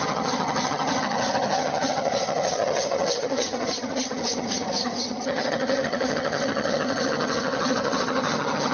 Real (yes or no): no